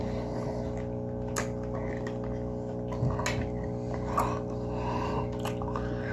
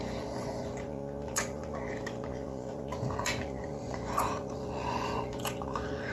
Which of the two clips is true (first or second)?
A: first